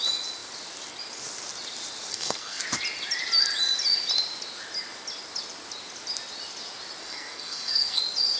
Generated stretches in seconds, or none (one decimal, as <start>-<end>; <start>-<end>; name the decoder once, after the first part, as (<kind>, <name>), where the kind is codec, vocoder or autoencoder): 2.1-2.6 (codec, SNAC); 7.0-8.0